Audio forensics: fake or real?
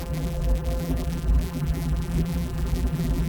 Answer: fake